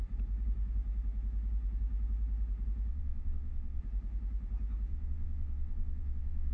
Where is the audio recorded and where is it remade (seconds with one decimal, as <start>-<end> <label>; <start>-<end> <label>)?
0.0-2.9 recorded; 2.9-3.8 remade; 3.8-4.9 recorded; 4.9-6.5 remade